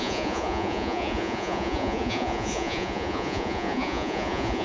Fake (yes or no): yes